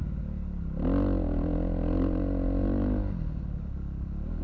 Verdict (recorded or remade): recorded